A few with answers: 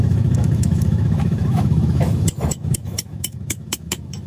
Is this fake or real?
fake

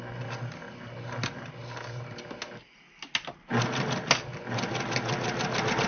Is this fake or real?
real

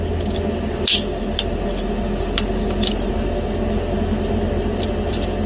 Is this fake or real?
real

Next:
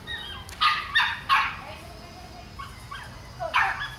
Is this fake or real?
real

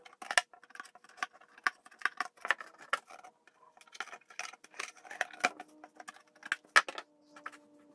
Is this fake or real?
real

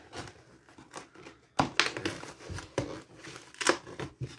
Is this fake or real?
real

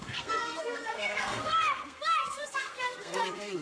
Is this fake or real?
fake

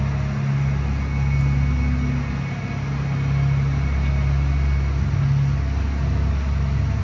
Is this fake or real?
real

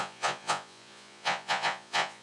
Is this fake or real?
fake